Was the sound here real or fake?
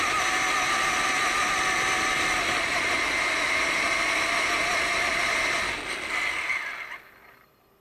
real